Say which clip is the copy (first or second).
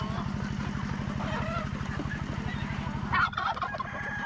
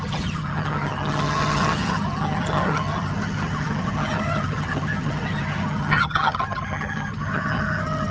second